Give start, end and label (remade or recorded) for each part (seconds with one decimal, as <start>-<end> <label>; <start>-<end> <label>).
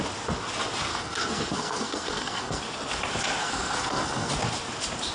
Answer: 0.0-0.9 recorded; 0.9-2.6 remade; 2.6-3.4 recorded; 3.4-4.3 remade; 4.3-5.1 recorded